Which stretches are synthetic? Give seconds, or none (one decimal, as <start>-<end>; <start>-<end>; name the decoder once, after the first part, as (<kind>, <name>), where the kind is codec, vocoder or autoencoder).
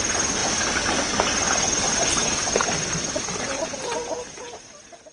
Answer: none